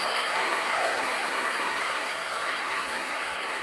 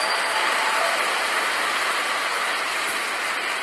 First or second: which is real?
second